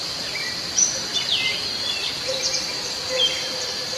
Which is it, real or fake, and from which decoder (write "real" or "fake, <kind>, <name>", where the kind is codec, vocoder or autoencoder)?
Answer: fake, vocoder, BigVGAN v2